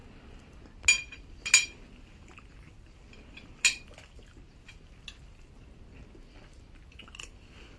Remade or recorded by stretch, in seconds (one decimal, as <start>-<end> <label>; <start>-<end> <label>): 0.0-7.8 recorded